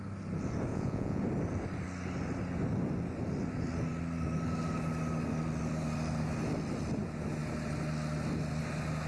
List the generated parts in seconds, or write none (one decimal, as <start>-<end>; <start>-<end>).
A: 0.7-1.2